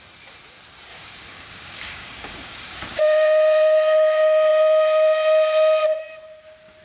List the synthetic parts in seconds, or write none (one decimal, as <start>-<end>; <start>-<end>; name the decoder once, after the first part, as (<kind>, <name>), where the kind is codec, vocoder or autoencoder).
0.9-3.0 (codec, DAC)